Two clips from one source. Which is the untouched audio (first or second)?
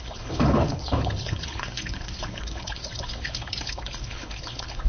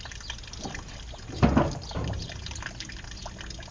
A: second